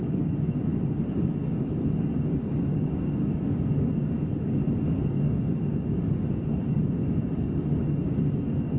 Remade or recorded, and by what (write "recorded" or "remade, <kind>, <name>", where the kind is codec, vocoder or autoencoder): remade, codec, DAC